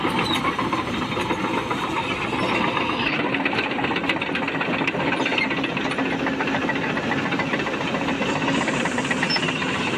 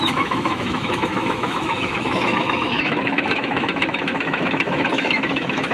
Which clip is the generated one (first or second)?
second